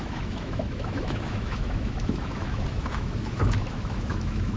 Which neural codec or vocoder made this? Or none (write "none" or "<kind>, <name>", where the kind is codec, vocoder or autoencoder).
autoencoder, DAC-VAE